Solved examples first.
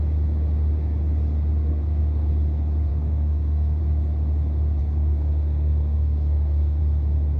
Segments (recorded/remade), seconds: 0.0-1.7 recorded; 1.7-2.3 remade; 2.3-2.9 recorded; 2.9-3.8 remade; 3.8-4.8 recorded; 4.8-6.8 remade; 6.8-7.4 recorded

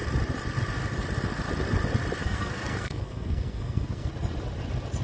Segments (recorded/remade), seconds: 0.0-2.2 recorded; 2.2-4.1 remade; 4.1-5.0 recorded

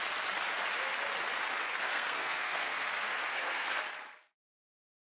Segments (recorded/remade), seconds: 0.0-1.7 recorded; 1.7-3.8 remade; 3.8-5.1 recorded

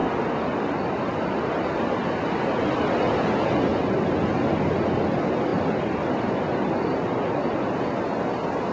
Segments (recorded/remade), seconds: 0.0-8.7 recorded

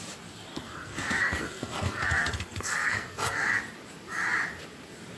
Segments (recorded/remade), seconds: 0.0-0.5 recorded; 0.5-3.6 remade; 3.6-5.2 recorded

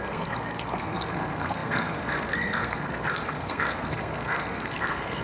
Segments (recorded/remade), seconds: 0.0-5.2 remade

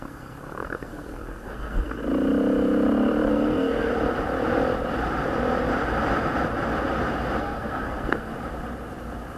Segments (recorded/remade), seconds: 0.0-2.0 remade; 2.0-3.3 recorded; 3.3-3.9 remade; 3.9-7.4 recorded; 7.4-8.3 remade; 8.3-9.4 recorded

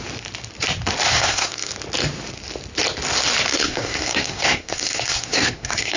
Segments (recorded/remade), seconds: 0.0-1.1 recorded; 1.1-1.7 remade; 1.7-3.5 recorded; 3.5-6.0 remade